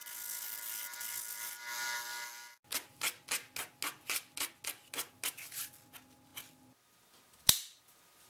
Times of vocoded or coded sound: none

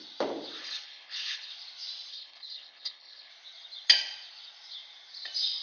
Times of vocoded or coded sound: 0.6-1.5 (codec, HILCodec); 2.1-3.3